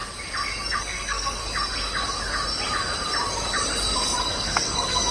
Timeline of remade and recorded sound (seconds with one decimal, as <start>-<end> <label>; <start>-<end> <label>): 0.0-0.8 recorded; 0.8-1.4 remade; 1.4-4.2 recorded; 4.2-5.1 remade

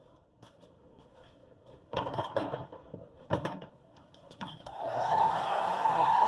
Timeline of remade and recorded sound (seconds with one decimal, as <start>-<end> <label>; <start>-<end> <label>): 0.0-6.3 remade

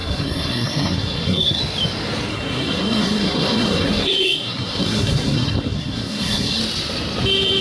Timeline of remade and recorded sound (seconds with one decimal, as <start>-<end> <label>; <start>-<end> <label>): 0.0-1.6 remade; 1.6-2.3 recorded; 2.3-6.6 remade; 6.6-7.6 recorded